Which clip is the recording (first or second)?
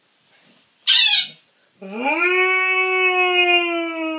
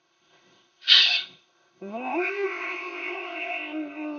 first